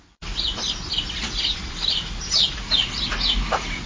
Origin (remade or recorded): recorded